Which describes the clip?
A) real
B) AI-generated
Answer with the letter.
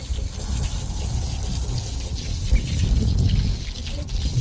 A